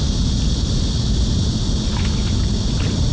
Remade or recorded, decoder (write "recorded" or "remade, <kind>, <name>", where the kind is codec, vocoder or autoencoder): recorded